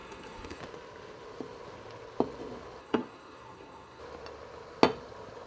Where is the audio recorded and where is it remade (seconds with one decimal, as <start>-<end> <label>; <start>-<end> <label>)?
0.0-0.6 remade; 0.6-2.8 recorded; 2.8-4.0 remade; 4.0-5.5 recorded